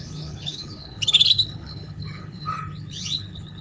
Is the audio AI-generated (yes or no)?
yes